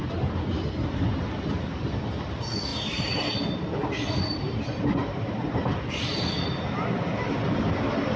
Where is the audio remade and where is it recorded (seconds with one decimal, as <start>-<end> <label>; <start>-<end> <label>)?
0.0-2.7 recorded; 2.7-3.4 remade; 3.4-5.0 recorded; 5.0-5.5 remade; 5.5-8.2 recorded

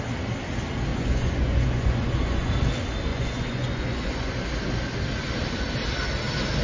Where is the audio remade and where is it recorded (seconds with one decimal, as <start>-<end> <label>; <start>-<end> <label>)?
0.0-0.9 recorded; 0.9-2.5 remade; 2.5-3.1 recorded; 3.1-4.3 remade; 4.3-6.6 recorded

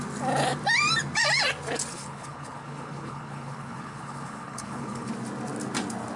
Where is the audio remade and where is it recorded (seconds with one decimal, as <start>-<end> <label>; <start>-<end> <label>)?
0.0-1.9 recorded; 1.9-5.1 remade; 5.1-6.2 recorded

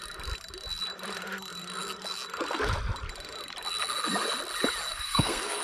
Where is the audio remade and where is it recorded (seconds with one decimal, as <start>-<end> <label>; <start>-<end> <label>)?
0.0-4.9 recorded; 4.9-5.6 remade

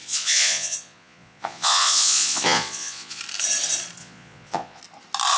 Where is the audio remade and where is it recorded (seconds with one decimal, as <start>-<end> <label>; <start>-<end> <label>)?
0.0-3.2 remade; 3.2-4.0 recorded; 4.0-4.8 remade; 4.8-5.4 recorded

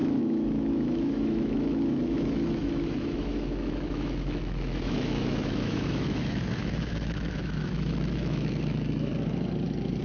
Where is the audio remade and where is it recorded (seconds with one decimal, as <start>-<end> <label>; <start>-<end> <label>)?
0.0-9.1 remade; 9.1-10.0 recorded